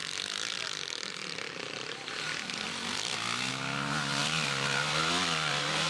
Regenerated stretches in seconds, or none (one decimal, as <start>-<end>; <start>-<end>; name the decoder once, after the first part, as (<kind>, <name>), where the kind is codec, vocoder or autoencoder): 0.0-3.5 (vocoder, BigVGAN v2); 4.2-5.5